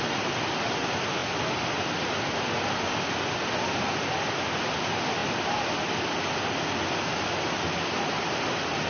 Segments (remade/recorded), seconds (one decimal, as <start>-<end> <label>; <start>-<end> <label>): 0.0-1.2 recorded; 1.2-4.4 remade; 4.4-5.2 recorded; 5.2-6.5 remade; 6.5-8.9 recorded